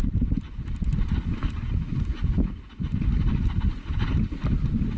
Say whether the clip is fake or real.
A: real